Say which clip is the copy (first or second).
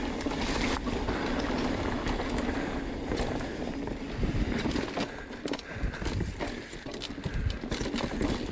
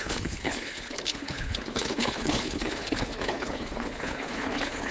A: second